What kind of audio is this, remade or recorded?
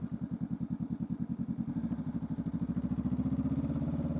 recorded